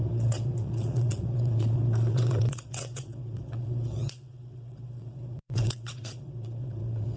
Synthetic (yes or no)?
yes